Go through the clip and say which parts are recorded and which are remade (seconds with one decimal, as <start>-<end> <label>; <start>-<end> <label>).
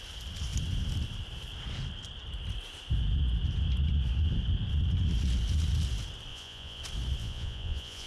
0.0-6.3 recorded; 6.3-6.8 remade; 6.8-7.2 recorded; 7.2-8.1 remade